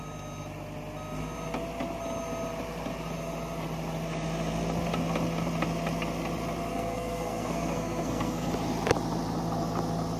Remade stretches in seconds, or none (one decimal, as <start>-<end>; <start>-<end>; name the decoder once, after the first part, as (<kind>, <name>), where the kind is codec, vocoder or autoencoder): 6.7-8.5 (codec, SNAC)